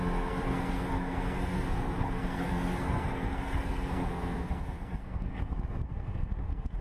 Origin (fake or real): fake